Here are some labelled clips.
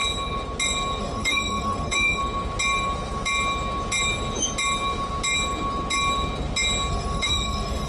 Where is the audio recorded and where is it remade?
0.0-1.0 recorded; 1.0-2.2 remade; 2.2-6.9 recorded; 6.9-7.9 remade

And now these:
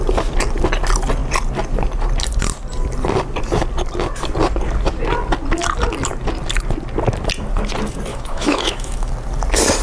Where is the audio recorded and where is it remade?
0.0-8.1 recorded; 8.1-9.1 remade; 9.1-9.8 recorded

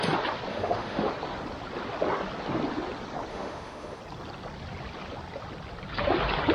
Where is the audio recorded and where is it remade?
0.0-0.5 recorded; 0.5-1.1 remade; 1.1-3.3 recorded; 3.3-4.0 remade; 4.0-6.5 recorded

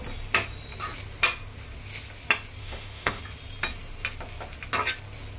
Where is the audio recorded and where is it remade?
0.0-2.6 recorded; 2.6-3.2 remade; 3.2-5.4 recorded

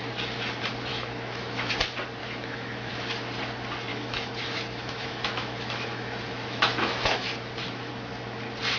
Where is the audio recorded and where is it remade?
0.0-0.9 recorded; 0.9-1.7 remade; 1.7-2.2 recorded; 2.2-2.9 remade; 2.9-3.9 recorded; 3.9-7.9 remade; 7.9-8.8 recorded

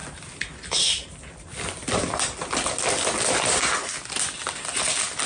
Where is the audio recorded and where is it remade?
0.0-5.3 recorded